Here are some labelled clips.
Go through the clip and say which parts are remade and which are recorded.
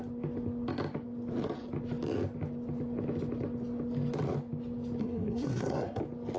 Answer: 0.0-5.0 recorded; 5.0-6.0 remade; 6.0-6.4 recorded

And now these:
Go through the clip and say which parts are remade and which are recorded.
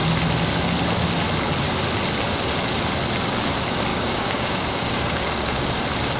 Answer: 0.0-3.9 recorded; 3.9-5.8 remade; 5.8-6.2 recorded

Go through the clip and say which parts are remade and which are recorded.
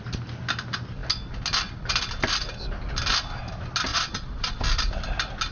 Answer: 0.0-3.9 recorded; 3.9-4.6 remade; 4.6-5.5 recorded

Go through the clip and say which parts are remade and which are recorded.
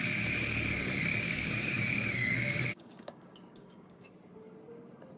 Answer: 0.0-1.1 recorded; 1.1-4.1 remade; 4.1-5.2 recorded